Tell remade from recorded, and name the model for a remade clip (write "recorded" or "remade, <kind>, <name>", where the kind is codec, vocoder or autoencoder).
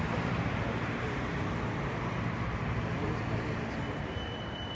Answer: recorded